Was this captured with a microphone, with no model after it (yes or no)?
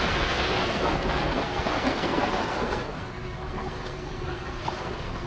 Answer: no